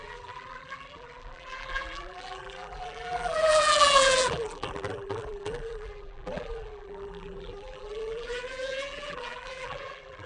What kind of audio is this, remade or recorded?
remade